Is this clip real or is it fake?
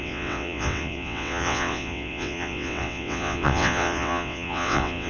fake